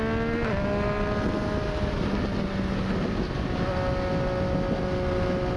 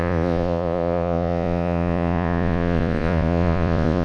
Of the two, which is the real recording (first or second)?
first